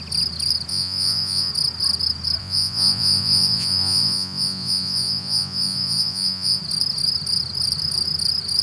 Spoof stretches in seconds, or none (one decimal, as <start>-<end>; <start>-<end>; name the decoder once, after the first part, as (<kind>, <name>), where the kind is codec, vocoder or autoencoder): 0.7-1.5 (vocoder, Vocos); 2.4-6.6